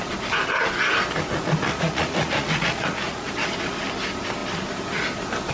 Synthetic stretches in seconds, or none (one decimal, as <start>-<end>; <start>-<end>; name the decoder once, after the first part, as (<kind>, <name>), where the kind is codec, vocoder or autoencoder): 1.7-3.3 (vocoder, Vocos)